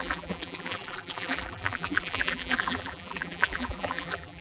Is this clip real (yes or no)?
no